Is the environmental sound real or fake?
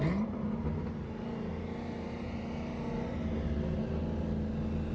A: real